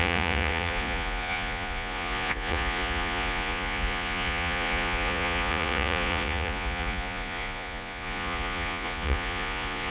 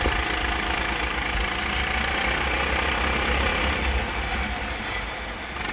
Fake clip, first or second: first